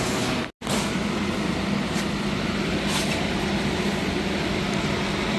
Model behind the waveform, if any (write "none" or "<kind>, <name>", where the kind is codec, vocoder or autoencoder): none